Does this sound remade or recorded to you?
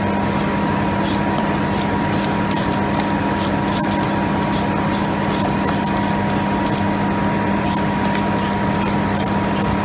recorded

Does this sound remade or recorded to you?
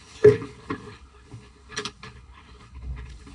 remade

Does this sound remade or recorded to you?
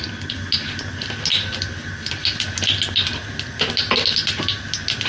recorded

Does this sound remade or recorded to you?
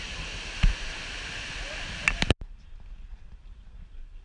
recorded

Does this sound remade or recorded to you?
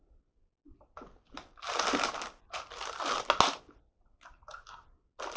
recorded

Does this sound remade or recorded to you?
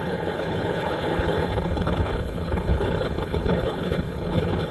remade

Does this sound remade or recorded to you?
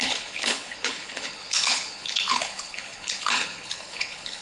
remade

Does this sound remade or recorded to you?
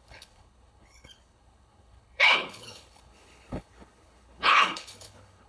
remade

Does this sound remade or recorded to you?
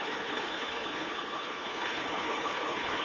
remade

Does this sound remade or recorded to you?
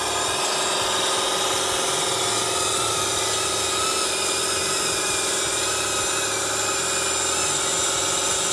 recorded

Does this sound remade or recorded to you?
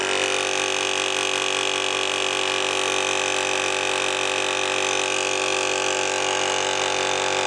recorded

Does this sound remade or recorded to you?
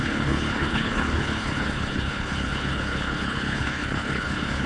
remade